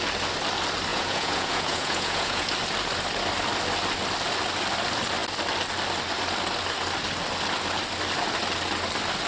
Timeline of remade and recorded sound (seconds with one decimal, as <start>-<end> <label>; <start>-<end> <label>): 0.0-0.9 recorded; 0.9-2.5 remade; 2.5-9.3 recorded